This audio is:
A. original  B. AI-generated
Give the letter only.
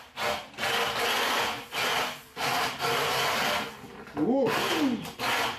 A